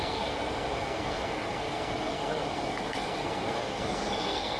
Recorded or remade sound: remade